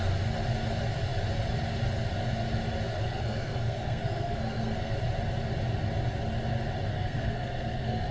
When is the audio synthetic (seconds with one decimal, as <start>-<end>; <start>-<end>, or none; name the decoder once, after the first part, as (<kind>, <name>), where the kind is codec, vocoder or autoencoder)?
3.0-5.0 (codec, SNAC); 6.9-8.1